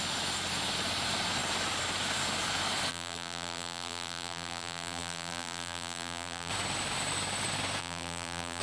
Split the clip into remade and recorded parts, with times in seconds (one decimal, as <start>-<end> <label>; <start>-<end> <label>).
0.0-2.9 recorded; 2.9-6.5 remade; 6.5-7.8 recorded; 7.8-8.6 remade